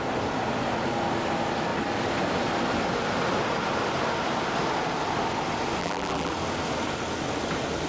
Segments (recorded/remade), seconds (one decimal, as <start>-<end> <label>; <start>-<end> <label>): 0.0-5.8 recorded; 5.8-6.3 remade; 6.3-7.9 recorded